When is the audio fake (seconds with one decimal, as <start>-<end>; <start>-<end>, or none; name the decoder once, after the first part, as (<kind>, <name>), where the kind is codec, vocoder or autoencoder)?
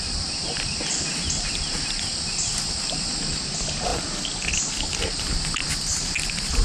none